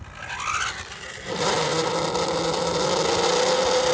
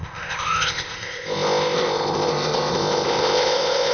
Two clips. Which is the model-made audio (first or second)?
second